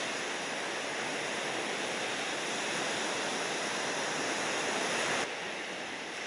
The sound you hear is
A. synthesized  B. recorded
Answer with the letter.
B